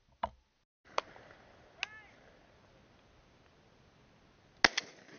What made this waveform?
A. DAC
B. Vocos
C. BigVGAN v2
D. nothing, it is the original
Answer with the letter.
D